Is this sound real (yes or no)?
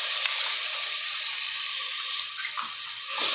no